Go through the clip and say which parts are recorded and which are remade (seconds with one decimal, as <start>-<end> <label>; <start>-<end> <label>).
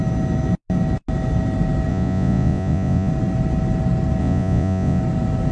0.0-1.9 recorded; 1.9-3.1 remade; 3.1-4.2 recorded; 4.2-5.0 remade; 5.0-5.5 recorded